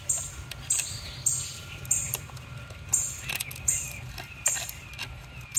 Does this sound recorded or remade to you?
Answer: recorded